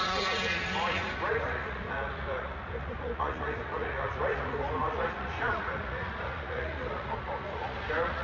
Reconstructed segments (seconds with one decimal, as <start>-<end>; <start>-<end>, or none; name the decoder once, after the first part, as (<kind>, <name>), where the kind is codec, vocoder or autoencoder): 0.0-8.2 (vocoder, Vocos)